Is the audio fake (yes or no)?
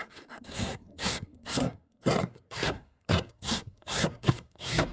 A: yes